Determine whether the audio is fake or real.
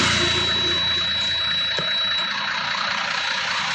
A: real